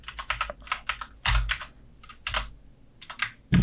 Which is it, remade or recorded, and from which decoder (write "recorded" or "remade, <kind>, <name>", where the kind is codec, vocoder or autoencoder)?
recorded